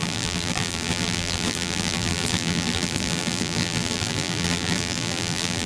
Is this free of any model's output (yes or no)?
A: no